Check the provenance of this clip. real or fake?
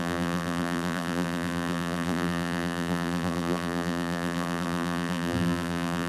fake